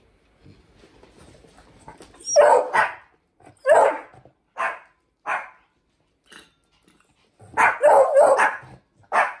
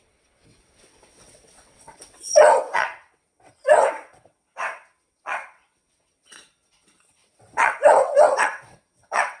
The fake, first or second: second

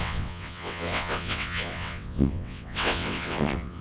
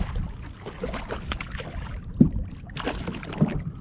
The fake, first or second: first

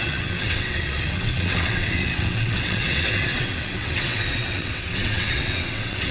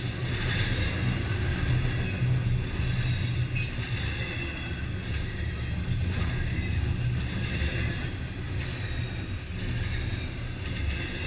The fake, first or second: first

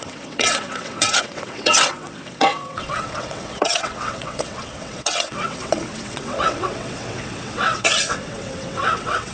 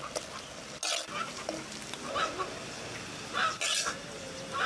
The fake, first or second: first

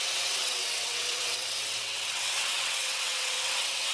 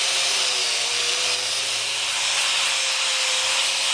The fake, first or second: first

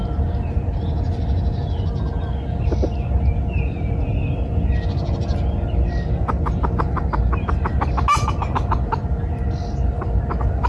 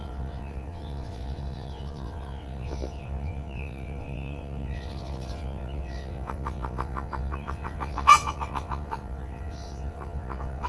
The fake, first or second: second